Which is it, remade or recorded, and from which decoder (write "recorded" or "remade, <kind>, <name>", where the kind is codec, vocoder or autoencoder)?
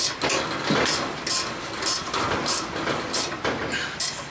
recorded